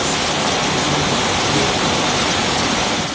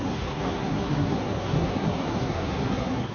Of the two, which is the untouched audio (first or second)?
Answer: first